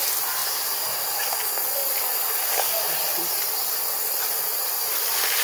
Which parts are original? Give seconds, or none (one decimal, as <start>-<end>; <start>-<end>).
0.0-5.4